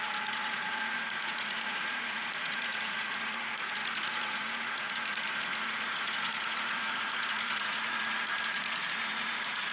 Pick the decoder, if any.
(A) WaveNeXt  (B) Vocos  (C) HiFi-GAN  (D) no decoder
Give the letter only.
B